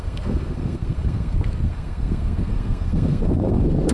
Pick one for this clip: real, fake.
fake